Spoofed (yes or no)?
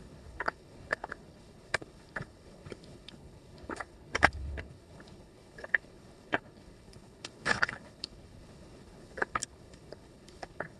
yes